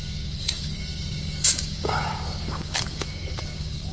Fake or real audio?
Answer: fake